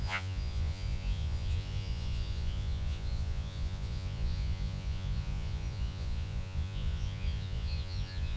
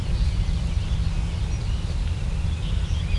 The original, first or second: second